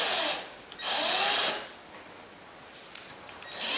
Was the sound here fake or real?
real